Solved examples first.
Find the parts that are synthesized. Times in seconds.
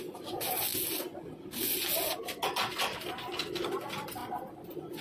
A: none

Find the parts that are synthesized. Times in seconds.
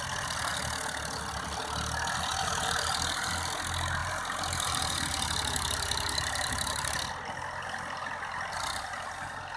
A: 2.3-3.3 (vocoder, BigVGAN v2); 4.0-6.9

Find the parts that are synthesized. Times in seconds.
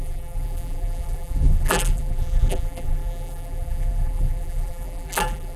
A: 0.0-5.6 (vocoder, BigVGAN v2)